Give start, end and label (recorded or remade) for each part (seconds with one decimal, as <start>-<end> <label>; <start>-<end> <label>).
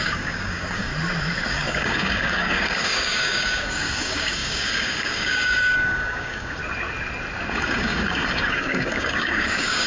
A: 0.0-0.9 remade; 0.9-1.5 recorded; 1.5-6.6 remade; 6.6-7.5 recorded; 7.5-9.9 remade